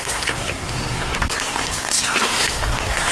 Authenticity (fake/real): fake